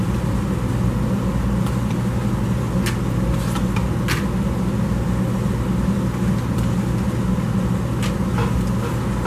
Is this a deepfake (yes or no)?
no